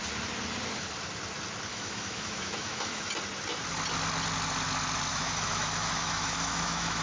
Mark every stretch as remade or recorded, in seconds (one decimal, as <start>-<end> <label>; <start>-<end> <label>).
0.0-1.7 recorded; 1.7-3.1 remade; 3.1-5.1 recorded; 5.1-7.0 remade